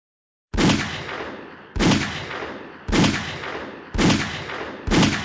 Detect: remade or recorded recorded